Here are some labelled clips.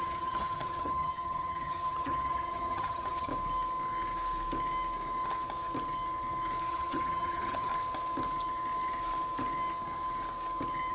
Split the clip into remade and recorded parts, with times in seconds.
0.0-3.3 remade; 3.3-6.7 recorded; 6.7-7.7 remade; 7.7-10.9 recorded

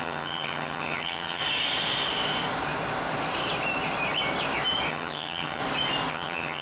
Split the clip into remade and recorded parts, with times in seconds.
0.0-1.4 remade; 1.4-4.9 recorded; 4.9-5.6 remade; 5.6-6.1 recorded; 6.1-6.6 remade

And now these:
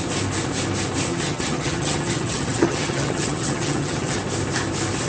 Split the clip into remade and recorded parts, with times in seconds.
0.0-1.1 recorded; 1.1-4.2 remade; 4.2-5.1 recorded

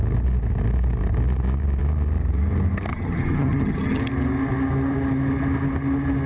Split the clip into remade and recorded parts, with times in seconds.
0.0-2.9 recorded; 2.9-4.0 remade; 4.0-6.3 recorded

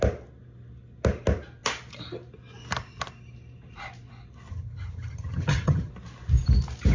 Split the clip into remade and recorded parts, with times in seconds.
0.0-4.5 recorded; 4.5-5.9 remade; 5.9-6.9 recorded